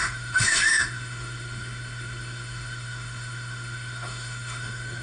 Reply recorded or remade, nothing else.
remade